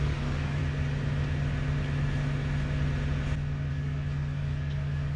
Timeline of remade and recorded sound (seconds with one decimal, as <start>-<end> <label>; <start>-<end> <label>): 0.0-0.6 remade; 0.6-3.7 recorded; 3.7-5.2 remade